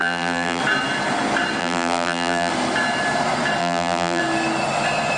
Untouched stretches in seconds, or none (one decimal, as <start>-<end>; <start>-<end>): 0.6-1.6; 2.5-3.6; 4.2-5.2